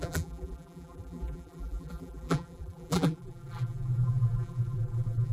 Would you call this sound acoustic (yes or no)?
no